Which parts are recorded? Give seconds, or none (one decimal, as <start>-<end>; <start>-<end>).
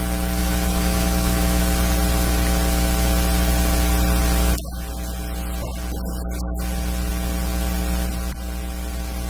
0.0-0.4; 1.6-9.3